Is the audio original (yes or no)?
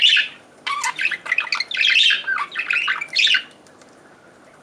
yes